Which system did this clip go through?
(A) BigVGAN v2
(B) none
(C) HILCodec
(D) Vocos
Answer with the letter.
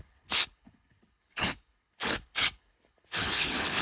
C